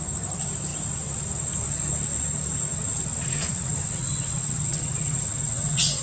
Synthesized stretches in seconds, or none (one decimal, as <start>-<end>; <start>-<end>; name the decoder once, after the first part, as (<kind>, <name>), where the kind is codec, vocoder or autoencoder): 2.7-6.0 (vocoder, WaveNeXt)

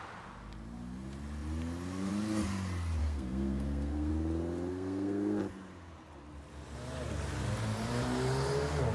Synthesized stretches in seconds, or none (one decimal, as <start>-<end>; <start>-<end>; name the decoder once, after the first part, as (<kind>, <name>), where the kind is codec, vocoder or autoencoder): 3.0-4.1 (codec, SNAC); 4.7-5.4